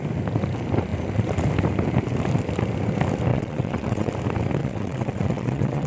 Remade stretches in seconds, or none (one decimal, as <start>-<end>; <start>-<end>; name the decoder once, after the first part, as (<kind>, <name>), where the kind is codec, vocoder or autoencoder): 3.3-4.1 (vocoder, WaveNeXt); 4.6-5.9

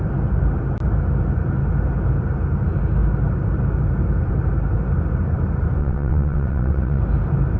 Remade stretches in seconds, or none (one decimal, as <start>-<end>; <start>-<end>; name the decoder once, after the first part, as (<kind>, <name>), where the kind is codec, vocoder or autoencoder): 5.8-7.0 (vocoder, WaveNeXt)

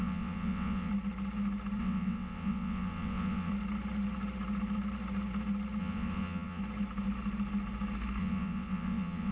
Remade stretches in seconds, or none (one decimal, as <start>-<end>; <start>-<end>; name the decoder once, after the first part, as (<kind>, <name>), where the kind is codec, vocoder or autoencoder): 0.0-0.9 (vocoder, WaveNeXt); 1.8-3.5; 5.8-6.6; 8.2-9.3